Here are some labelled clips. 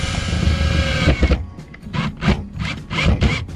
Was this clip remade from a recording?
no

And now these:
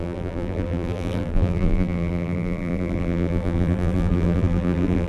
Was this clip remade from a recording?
yes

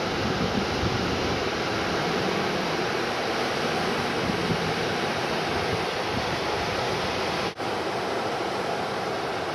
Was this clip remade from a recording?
yes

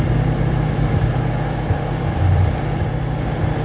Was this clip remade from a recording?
yes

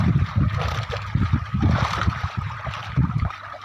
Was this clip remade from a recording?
yes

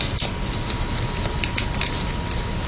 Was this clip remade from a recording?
no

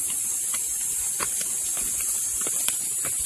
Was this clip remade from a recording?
no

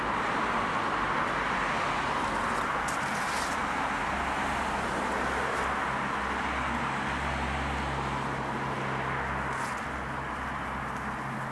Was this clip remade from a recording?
no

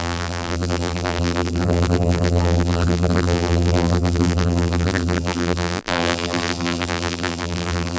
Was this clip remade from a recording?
yes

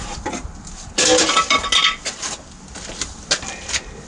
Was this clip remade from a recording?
no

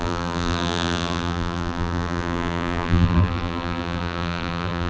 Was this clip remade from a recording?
yes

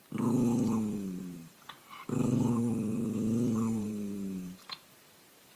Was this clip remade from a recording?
yes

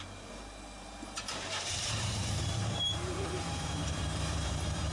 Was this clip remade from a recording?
yes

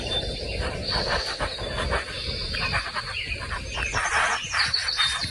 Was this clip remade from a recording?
yes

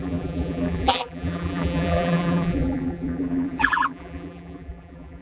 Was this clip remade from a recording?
yes